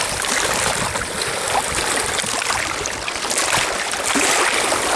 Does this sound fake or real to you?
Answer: fake